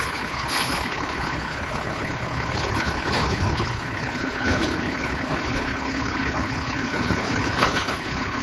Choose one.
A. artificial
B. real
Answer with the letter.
A